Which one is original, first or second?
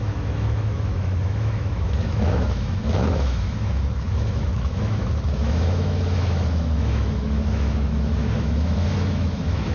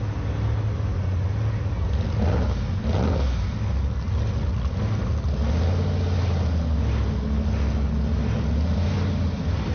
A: second